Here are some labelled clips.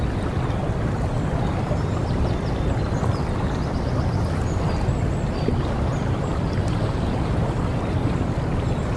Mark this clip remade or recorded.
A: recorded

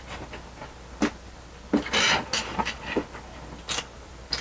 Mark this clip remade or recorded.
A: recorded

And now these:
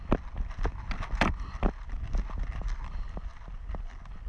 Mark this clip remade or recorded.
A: recorded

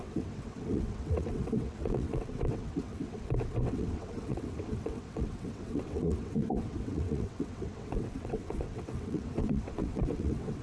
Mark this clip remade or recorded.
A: remade